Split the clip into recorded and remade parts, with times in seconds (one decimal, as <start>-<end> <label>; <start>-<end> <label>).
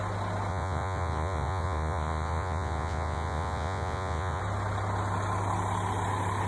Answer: 0.0-0.5 recorded; 0.5-4.4 remade; 4.4-6.5 recorded